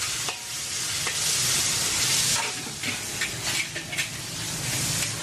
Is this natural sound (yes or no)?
yes